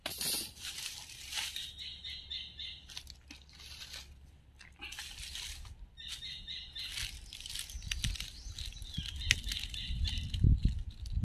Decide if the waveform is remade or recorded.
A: recorded